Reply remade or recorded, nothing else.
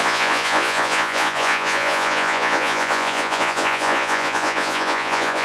remade